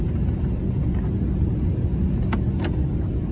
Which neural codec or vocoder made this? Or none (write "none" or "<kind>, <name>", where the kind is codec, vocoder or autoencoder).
none